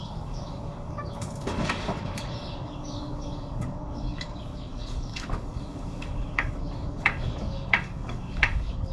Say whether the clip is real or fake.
fake